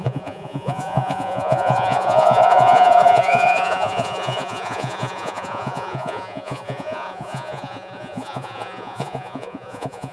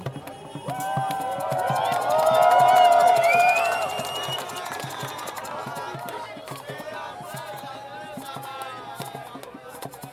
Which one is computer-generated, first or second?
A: first